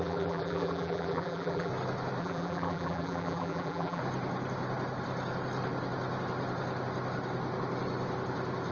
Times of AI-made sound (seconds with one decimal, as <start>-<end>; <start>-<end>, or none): 0.0-1.7; 2.2-4.0